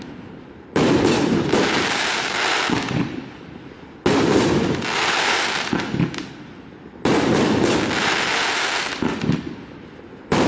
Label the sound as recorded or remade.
remade